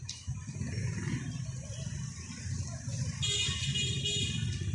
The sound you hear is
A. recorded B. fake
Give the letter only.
A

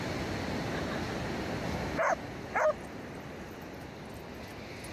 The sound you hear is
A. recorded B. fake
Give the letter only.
A